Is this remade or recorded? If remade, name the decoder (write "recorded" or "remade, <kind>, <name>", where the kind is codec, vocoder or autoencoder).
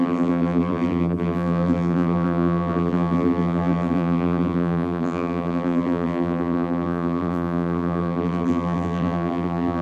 remade, vocoder, BigVGAN v2